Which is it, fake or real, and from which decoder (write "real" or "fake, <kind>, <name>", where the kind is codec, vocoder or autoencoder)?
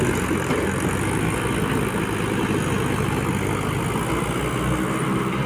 real